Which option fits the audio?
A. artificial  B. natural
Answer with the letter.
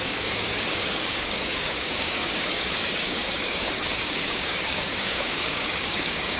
A